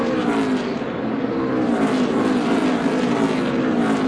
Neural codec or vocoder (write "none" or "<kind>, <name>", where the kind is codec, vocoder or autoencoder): none